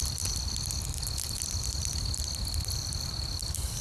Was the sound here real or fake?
real